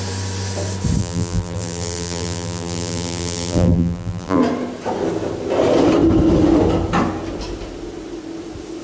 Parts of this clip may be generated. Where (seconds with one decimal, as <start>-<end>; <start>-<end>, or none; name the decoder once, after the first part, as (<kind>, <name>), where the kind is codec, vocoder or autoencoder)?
1.0-4.4 (vocoder, BigVGAN v2)